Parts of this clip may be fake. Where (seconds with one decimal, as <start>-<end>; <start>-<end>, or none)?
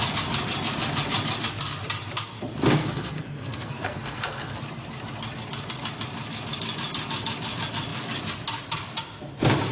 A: 2.8-4.6